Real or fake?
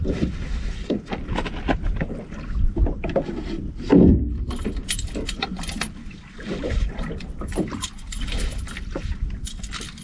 real